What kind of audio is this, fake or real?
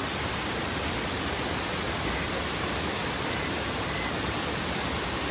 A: real